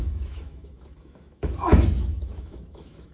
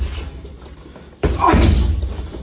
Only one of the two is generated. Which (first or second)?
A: first